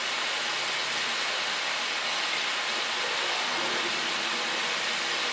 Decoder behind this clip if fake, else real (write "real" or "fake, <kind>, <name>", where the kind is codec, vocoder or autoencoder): real